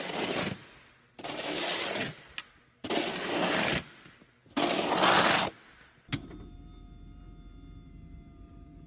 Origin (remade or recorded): recorded